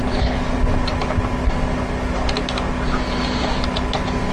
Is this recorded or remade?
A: recorded